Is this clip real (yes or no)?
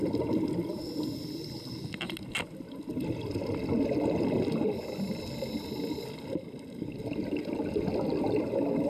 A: yes